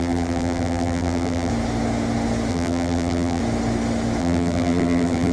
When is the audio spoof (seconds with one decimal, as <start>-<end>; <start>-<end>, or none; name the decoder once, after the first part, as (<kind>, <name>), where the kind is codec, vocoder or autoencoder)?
0.0-1.5 (vocoder, BigVGAN v2); 2.5-3.4; 4.2-5.3